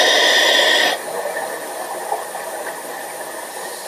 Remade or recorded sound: recorded